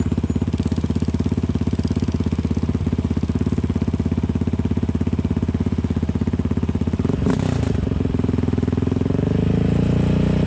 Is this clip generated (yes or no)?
no